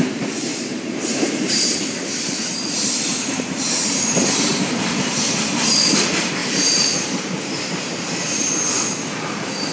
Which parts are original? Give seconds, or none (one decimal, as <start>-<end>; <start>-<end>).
none